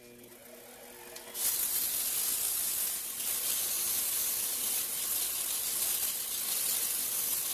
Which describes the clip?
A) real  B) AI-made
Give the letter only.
A